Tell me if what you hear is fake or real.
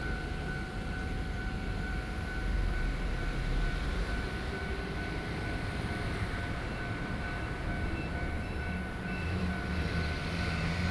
fake